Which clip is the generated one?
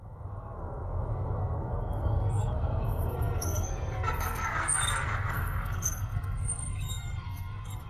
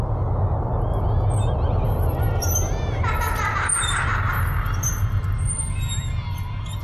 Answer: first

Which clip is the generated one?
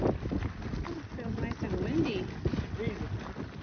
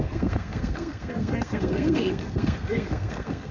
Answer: second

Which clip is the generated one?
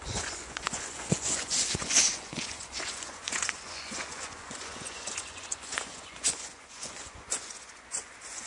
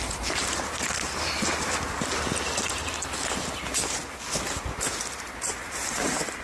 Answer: first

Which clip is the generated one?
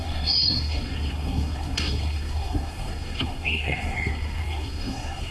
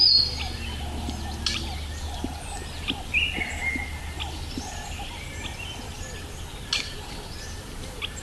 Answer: first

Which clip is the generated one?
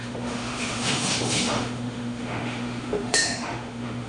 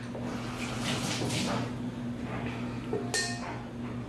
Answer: first